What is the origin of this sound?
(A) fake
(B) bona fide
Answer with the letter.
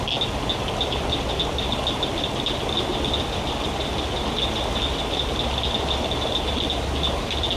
B